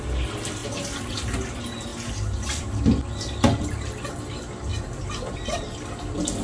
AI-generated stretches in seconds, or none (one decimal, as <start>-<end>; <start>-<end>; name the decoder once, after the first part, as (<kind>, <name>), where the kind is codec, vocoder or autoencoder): 1.9-2.8 (vocoder, BigVGAN v2); 4.7-5.7

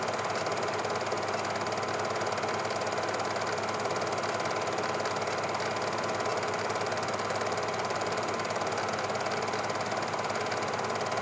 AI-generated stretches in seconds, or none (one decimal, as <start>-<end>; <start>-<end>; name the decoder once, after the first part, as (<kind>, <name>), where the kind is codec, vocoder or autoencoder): 6.3-8.9 (vocoder, BigVGAN v2)

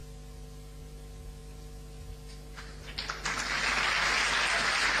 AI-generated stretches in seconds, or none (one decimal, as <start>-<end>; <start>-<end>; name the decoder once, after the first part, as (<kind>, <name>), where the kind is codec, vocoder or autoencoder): none

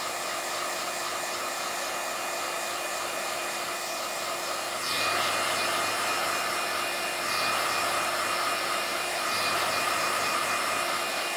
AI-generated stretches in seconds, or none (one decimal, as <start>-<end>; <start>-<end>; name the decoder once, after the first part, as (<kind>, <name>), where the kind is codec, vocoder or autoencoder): 8.9-10.4 (vocoder, BigVGAN v2)

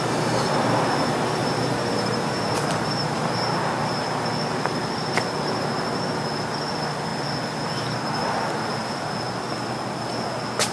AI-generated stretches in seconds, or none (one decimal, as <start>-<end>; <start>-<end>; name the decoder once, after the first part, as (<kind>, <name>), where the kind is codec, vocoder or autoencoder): 1.4-3.3 (vocoder, BigVGAN v2)

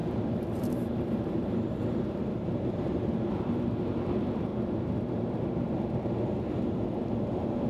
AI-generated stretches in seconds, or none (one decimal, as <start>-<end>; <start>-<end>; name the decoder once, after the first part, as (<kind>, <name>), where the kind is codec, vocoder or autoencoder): 0.0-3.9 (vocoder, BigVGAN v2)

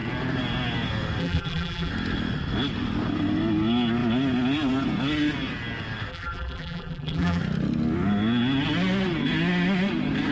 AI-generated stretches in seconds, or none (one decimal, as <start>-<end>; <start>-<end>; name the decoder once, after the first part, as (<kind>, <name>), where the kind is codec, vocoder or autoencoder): 1.2-1.9 (vocoder, BigVGAN v2); 6.1-7.4